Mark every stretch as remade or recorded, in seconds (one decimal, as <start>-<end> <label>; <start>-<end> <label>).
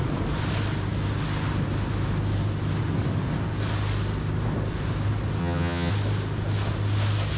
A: 0.0-5.4 recorded; 5.4-5.9 remade; 5.9-7.4 recorded